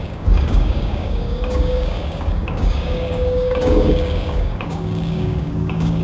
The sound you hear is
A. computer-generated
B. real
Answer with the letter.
A